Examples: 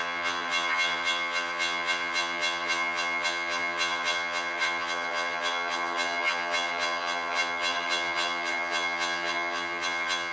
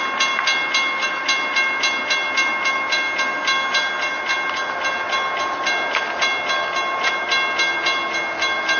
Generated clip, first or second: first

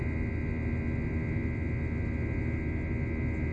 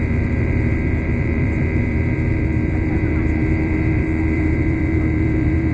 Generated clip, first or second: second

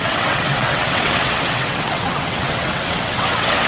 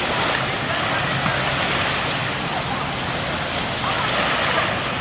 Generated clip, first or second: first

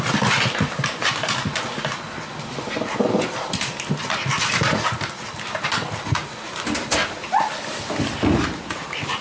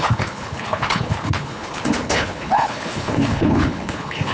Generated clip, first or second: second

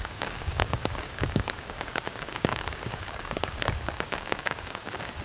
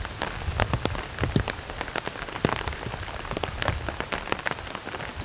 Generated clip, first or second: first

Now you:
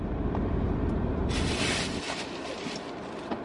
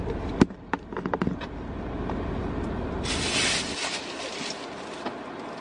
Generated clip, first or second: first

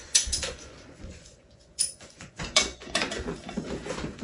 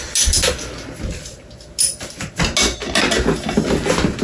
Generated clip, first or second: first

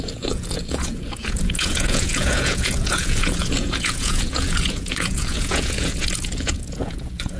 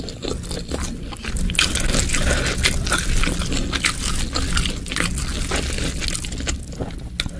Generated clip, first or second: first